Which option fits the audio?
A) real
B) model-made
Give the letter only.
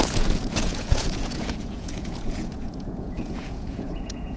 B